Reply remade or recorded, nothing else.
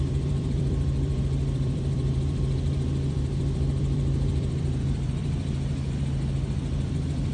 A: remade